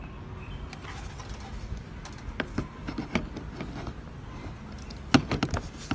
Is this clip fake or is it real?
real